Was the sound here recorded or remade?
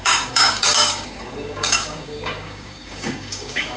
remade